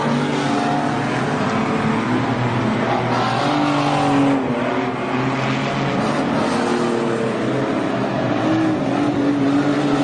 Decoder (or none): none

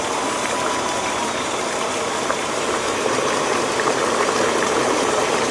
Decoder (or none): vocoder, BigVGAN v2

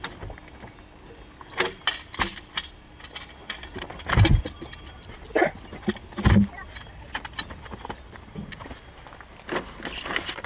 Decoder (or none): none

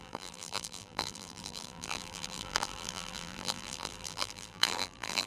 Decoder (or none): vocoder, BigVGAN v2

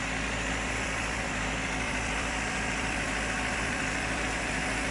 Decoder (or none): vocoder, BigVGAN v2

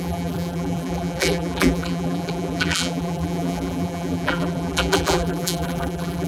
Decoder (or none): vocoder, BigVGAN v2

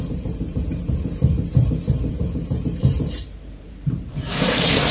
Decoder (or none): vocoder, BigVGAN v2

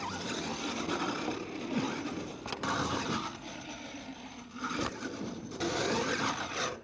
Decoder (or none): vocoder, BigVGAN v2